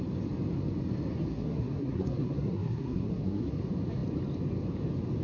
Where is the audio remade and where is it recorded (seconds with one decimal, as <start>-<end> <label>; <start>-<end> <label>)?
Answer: 0.0-1.3 recorded; 1.3-3.6 remade; 3.6-5.2 recorded